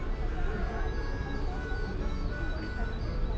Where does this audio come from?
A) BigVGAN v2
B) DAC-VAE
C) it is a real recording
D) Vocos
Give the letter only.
C